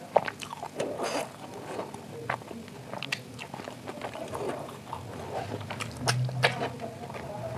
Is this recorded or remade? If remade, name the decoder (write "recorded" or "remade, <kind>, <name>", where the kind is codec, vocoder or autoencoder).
recorded